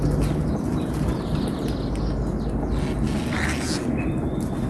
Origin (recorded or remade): recorded